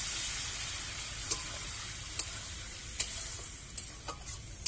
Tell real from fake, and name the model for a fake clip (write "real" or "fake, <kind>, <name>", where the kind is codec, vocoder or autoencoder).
real